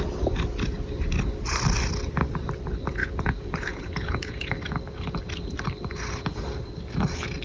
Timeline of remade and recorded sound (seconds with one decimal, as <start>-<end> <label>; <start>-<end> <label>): 0.0-3.0 recorded; 3.0-4.5 remade; 4.5-7.4 recorded